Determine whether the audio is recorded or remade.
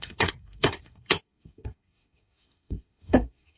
remade